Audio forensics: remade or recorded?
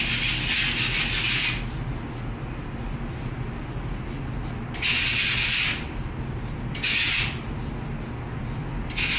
recorded